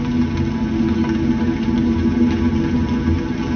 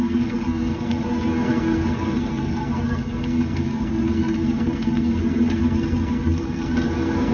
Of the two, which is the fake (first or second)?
second